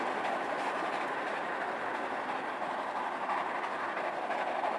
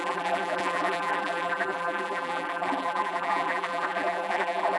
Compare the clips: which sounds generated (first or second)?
second